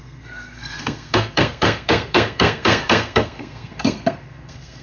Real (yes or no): no